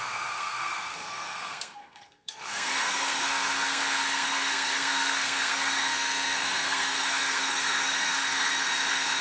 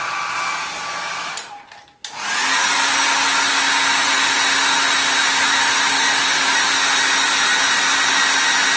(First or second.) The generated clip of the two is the first